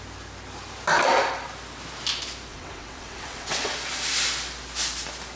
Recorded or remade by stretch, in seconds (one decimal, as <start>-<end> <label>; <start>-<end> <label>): 0.0-2.5 recorded; 2.5-3.7 remade; 3.7-5.4 recorded